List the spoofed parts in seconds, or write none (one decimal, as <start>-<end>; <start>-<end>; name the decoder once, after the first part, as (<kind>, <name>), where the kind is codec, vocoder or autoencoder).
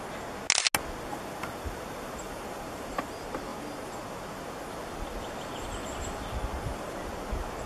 1.1-3.1 (vocoder, BigVGAN v2)